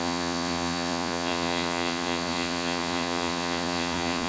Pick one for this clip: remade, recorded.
remade